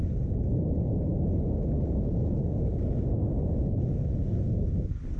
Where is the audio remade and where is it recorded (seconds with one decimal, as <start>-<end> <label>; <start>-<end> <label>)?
0.0-5.2 recorded